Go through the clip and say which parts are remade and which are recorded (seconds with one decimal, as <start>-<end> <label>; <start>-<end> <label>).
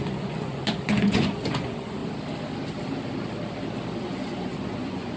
0.0-2.0 remade; 2.0-4.0 recorded; 4.0-5.2 remade